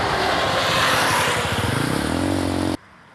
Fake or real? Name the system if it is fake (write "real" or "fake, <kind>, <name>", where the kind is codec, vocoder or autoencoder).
real